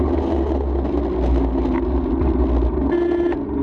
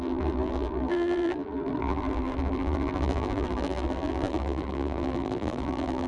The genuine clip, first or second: first